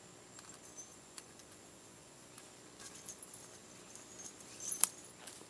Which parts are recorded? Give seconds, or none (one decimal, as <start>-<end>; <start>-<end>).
0.0-0.9; 2.3-5.5